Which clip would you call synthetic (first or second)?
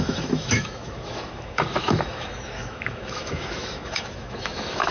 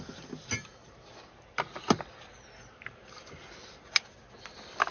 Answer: first